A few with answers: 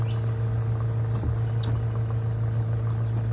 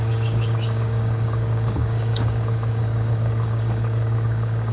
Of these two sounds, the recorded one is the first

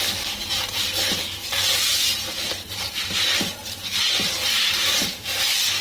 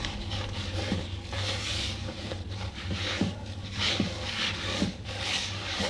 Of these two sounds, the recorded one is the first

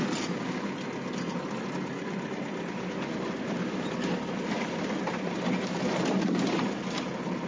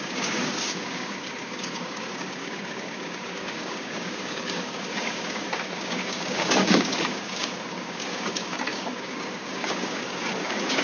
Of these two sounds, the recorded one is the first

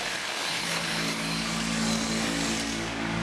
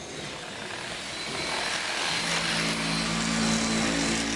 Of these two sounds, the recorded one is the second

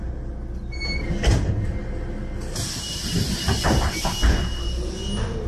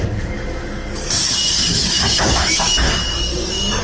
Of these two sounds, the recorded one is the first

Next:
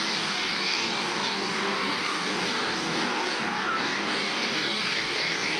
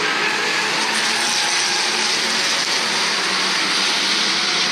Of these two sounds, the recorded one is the second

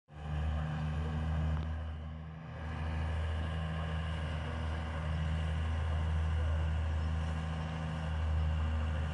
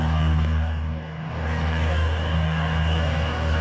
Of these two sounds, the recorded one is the first